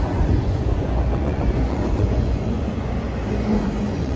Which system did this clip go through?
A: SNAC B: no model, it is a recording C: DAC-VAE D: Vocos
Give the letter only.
D